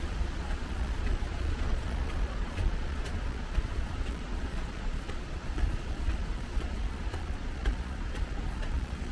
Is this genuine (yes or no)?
no